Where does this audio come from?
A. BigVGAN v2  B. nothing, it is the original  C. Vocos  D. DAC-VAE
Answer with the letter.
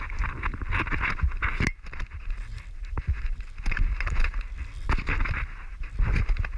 B